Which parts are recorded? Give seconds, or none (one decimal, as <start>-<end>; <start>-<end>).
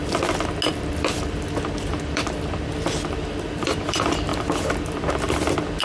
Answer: 0.0-0.9; 4.3-4.9